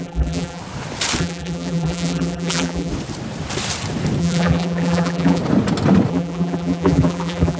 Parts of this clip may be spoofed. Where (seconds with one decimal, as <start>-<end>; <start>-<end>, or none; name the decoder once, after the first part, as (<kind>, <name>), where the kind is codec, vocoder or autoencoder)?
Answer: 0.0-0.6 (vocoder, BigVGAN v2); 1.2-2.9; 4.2-5.4; 6.1-7.6